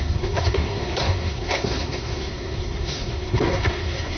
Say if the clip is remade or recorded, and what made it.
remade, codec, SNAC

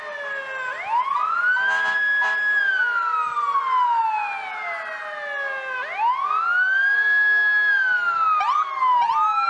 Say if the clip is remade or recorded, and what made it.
recorded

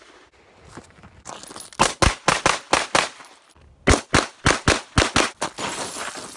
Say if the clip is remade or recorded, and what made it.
recorded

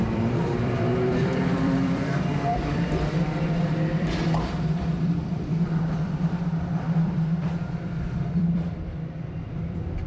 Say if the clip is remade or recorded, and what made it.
remade, vocoder, BigVGAN v2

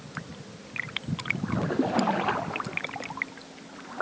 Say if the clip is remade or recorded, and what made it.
recorded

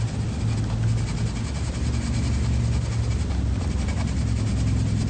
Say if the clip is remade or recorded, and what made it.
recorded